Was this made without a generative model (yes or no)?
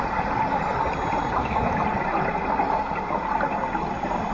yes